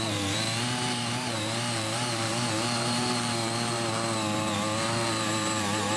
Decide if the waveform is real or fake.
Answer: fake